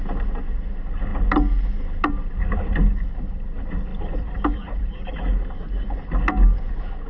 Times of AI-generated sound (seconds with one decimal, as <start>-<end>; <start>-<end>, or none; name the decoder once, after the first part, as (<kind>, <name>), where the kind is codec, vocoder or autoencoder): 3.9-5.1 (vocoder, BigVGAN v2)